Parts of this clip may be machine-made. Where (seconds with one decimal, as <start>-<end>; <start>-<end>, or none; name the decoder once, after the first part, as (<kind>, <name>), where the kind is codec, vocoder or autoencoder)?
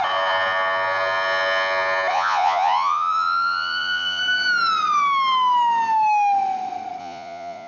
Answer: 2.1-4.2 (vocoder, Vocos); 7.0-7.7